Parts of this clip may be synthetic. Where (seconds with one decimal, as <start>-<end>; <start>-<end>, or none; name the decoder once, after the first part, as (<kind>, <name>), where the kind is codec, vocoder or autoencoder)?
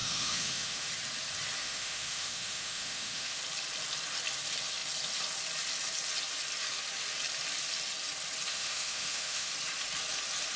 0.0-0.9 (autoencoder, DAC-VAE); 1.6-3.4; 8.5-9.5